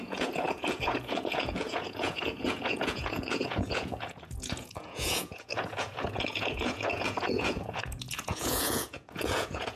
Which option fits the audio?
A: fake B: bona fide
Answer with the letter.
A